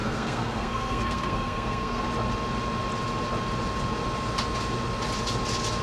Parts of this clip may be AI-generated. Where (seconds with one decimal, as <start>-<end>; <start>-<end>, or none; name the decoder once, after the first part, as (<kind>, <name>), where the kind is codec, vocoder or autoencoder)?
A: 0.0-2.0 (codec, SNAC)